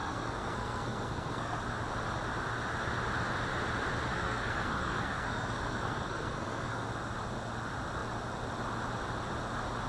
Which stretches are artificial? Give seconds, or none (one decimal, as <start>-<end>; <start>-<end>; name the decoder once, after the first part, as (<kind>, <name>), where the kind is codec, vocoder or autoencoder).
0.0-1.6 (codec, SNAC); 4.1-6.9